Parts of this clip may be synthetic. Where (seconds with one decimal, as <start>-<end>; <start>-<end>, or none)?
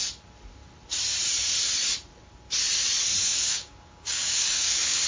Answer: 3.3-5.1